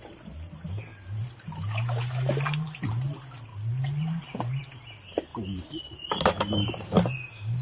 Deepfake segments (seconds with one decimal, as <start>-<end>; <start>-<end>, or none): 0.9-2.0; 3.5-4.2; 5.3-5.8